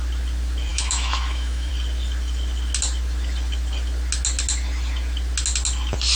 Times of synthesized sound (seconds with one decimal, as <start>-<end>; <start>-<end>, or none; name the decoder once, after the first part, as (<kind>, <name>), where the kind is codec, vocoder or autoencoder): 0.7-1.7 (autoencoder, DAC-VAE)